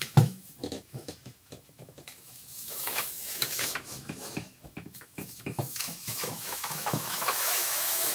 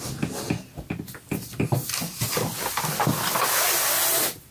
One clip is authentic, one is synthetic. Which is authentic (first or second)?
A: second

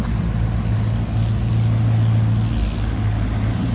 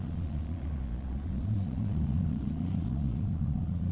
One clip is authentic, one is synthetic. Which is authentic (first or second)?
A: first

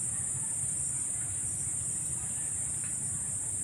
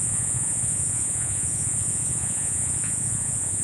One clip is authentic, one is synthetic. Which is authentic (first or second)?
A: first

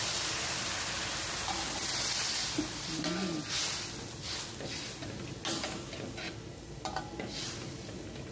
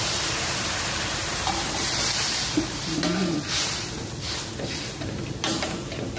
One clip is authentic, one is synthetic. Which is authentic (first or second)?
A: first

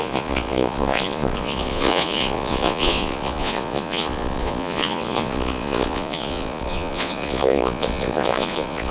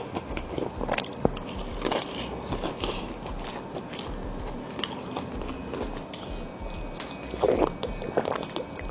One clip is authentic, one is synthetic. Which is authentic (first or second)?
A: second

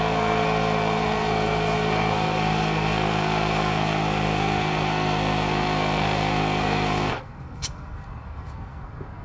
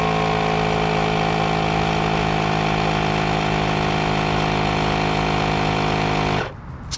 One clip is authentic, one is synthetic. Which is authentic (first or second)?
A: second